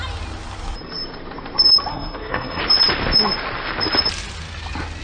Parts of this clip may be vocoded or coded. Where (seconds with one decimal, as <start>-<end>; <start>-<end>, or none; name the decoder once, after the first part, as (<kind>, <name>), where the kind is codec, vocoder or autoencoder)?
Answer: 1.9-2.6 (codec, SNAC)